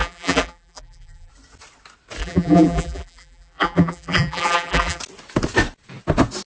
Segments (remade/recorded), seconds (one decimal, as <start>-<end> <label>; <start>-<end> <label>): 0.0-1.3 remade; 1.3-2.2 recorded; 2.2-5.0 remade; 5.0-6.5 recorded